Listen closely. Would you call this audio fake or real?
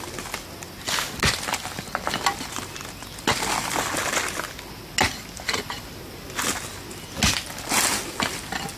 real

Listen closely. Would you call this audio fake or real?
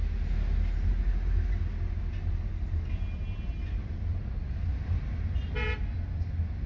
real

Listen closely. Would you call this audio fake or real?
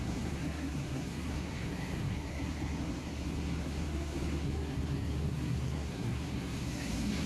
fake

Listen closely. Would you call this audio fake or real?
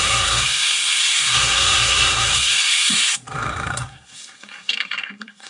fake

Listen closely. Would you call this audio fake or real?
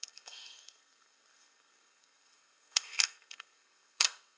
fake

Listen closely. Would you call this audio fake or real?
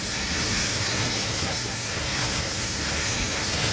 fake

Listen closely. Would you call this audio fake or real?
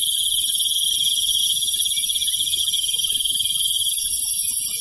real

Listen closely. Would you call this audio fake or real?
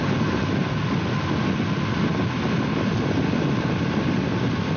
real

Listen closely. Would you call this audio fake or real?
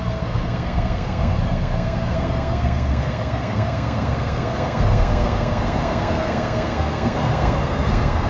fake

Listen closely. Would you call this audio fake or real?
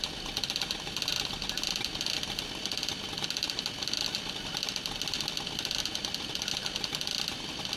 real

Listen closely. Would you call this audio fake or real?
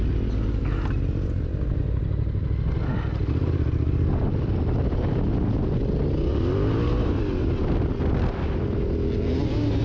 real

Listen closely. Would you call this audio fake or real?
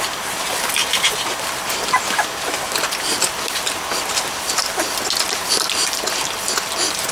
real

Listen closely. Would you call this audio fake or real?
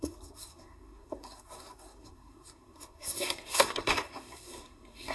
fake